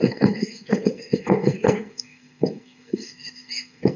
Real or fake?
fake